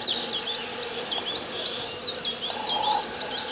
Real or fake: real